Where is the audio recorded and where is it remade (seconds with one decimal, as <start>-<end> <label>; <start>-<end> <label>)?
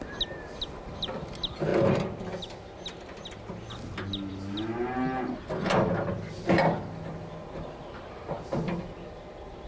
0.0-9.7 recorded